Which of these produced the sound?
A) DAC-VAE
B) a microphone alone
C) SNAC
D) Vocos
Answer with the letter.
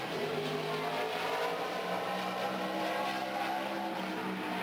B